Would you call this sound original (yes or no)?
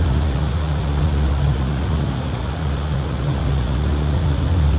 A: no